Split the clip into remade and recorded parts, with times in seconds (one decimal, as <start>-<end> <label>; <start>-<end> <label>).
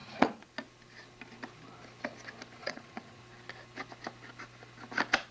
0.0-0.5 remade; 0.5-2.6 recorded; 2.6-3.2 remade; 3.2-5.3 recorded